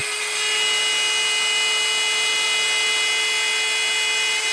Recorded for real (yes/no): yes